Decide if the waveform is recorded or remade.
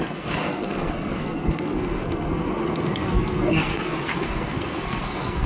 remade